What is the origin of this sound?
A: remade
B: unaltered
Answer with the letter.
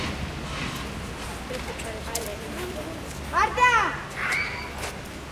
B